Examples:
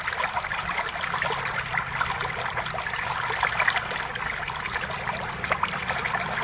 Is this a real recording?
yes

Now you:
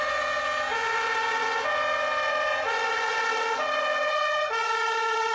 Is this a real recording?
no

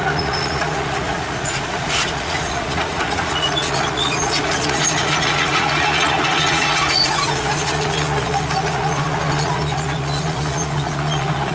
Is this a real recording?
no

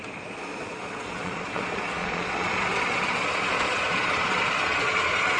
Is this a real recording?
no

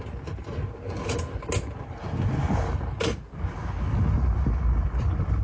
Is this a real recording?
yes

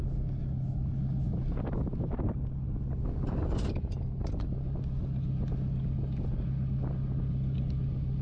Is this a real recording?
yes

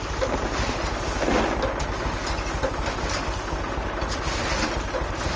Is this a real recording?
yes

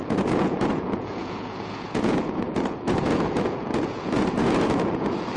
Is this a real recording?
no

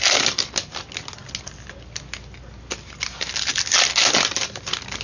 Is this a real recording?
yes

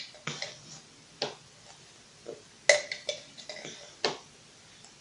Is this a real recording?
yes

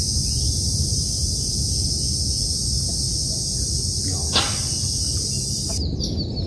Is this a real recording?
yes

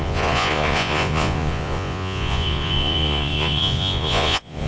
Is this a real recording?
no